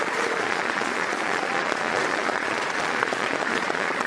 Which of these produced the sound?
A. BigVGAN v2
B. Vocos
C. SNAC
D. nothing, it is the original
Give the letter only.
B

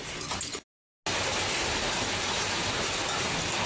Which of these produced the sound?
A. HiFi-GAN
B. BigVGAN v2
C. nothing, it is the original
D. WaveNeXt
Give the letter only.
C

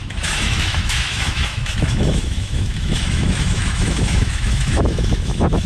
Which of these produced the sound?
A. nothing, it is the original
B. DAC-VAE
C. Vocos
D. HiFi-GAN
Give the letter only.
B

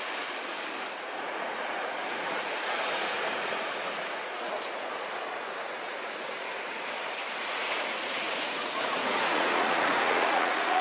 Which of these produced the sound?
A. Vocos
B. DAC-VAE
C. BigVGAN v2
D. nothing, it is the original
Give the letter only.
A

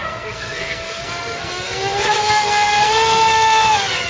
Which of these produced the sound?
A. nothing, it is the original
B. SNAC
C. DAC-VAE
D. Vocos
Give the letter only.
B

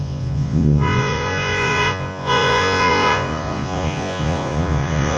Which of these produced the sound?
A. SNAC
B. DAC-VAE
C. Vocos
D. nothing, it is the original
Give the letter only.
C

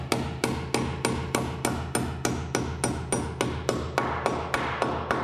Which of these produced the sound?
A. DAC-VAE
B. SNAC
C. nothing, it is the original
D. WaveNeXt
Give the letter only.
C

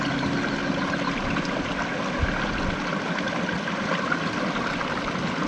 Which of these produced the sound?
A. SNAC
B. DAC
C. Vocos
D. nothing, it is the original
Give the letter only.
D